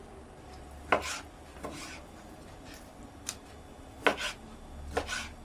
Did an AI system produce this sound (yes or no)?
no